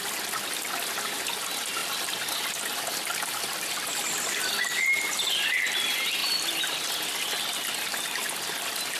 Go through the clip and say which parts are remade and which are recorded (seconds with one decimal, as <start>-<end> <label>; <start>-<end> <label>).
0.0-9.0 recorded